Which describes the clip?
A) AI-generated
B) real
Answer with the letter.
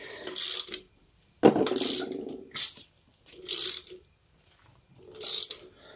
B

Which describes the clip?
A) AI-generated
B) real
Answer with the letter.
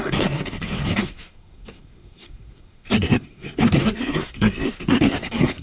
A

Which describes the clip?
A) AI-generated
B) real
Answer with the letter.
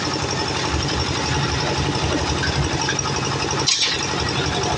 B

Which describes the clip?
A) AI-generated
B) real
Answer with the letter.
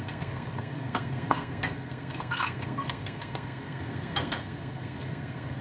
A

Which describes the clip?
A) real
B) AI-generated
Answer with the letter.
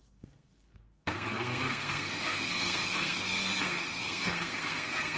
B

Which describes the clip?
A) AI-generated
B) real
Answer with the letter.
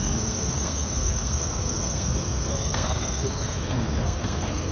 A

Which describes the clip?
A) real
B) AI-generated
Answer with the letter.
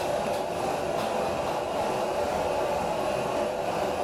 A